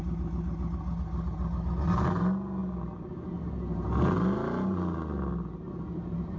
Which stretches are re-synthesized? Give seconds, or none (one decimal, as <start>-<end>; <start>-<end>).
none